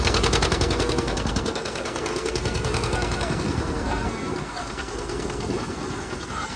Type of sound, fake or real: fake